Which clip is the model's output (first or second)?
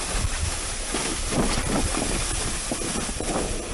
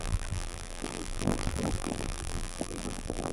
second